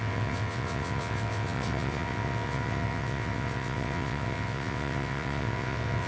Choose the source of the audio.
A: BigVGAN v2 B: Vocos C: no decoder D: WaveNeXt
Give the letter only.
D